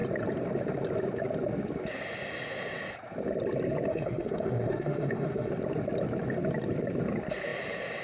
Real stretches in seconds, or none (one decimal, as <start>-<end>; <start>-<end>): 0.0-3.9; 5.5-8.0